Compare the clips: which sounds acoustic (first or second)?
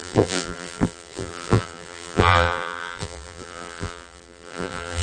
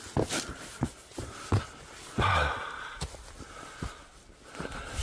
second